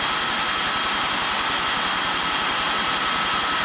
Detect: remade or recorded recorded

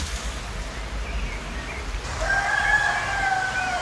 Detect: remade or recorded recorded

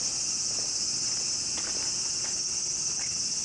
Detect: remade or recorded recorded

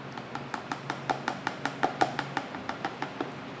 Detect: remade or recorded recorded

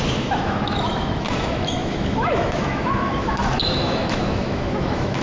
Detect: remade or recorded remade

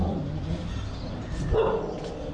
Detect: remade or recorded recorded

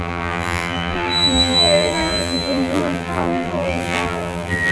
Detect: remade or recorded remade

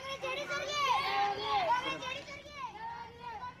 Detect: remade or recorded recorded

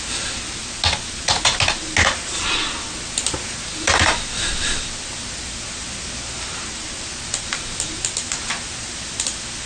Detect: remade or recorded recorded